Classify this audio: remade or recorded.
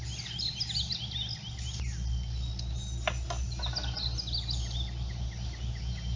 recorded